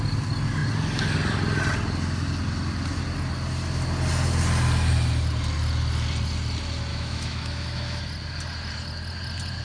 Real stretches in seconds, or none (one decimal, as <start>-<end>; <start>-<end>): 0.0-6.9; 8.0-9.6